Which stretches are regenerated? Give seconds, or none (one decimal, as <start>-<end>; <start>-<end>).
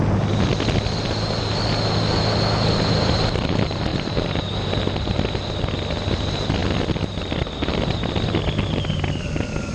3.9-4.7